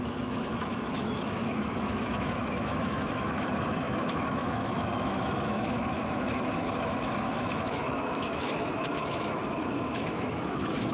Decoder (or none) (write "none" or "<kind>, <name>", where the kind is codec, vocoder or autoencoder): autoencoder, DAC-VAE